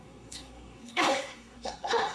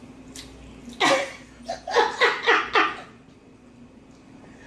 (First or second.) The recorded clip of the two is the second